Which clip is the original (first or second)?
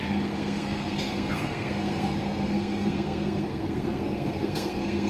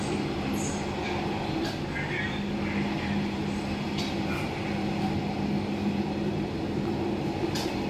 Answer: second